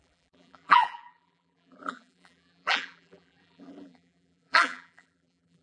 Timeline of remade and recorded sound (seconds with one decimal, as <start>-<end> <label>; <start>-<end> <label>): 0.0-5.6 remade